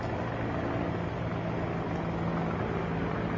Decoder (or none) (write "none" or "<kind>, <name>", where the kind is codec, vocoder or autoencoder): none